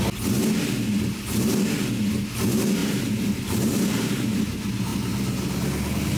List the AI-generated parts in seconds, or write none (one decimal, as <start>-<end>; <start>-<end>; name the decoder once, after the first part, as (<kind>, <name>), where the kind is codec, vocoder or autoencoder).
2.8-4.3 (vocoder, BigVGAN v2)